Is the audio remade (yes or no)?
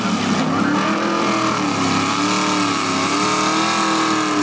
no